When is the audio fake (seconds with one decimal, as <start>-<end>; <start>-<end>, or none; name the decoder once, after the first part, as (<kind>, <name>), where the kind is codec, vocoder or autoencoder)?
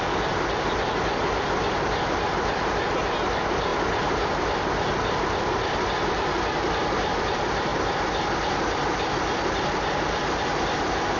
none